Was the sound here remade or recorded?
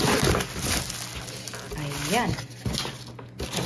recorded